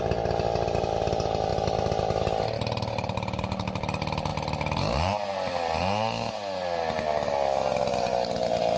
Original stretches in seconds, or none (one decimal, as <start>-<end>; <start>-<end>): 0.0-8.8